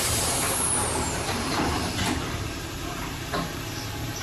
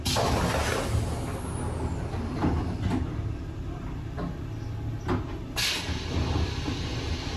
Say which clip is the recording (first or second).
second